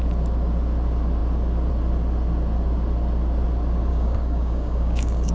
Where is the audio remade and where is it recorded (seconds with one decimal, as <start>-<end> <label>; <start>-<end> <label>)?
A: 0.0-3.9 recorded; 3.9-5.3 remade